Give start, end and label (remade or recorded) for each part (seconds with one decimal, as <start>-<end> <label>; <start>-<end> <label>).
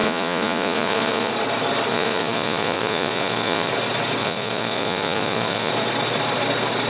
0.0-1.3 remade; 1.3-1.9 recorded; 1.9-3.7 remade; 3.7-4.2 recorded; 4.2-5.7 remade; 5.7-6.9 recorded